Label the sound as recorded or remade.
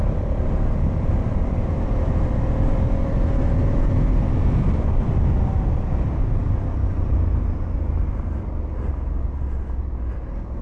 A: recorded